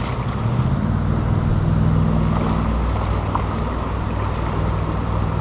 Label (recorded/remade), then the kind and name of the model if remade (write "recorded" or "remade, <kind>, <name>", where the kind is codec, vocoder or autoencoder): recorded